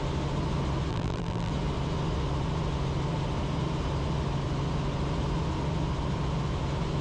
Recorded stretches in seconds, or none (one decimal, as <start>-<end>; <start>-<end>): 0.0-0.9; 1.5-7.0